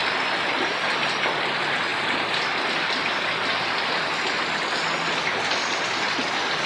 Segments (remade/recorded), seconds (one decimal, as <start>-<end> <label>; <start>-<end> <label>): 0.0-0.7 recorded; 0.7-6.7 remade